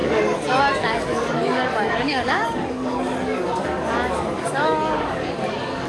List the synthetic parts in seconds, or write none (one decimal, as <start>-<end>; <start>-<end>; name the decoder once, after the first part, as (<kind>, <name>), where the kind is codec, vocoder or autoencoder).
0.0-5.9 (codec, DAC)